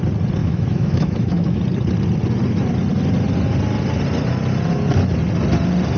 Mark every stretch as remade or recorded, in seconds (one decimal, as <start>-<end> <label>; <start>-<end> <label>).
0.0-0.4 recorded; 0.4-1.6 remade; 1.6-6.0 recorded